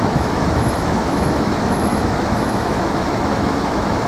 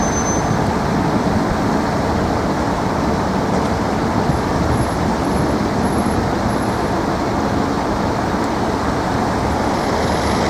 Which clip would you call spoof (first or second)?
first